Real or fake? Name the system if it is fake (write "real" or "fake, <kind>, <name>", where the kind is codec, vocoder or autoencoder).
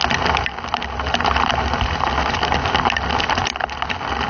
real